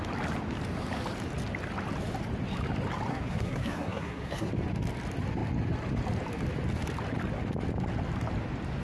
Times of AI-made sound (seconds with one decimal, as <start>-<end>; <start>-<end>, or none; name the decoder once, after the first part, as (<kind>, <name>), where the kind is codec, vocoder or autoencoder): 3.1-4.5 (codec, SNAC)